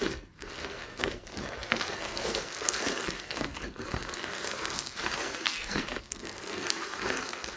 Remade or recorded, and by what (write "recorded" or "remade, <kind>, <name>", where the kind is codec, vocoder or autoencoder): remade, codec, SNAC